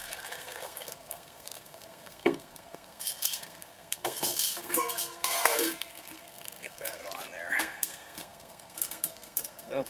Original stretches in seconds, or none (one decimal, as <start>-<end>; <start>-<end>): 7.0-7.6